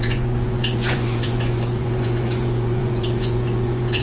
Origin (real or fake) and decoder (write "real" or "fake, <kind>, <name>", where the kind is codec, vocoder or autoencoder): fake, vocoder, Vocos